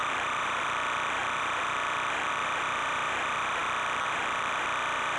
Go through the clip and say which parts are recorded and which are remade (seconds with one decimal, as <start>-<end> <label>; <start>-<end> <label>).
0.0-5.2 remade